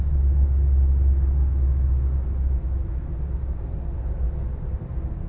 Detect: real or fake real